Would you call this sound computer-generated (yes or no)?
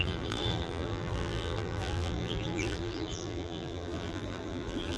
yes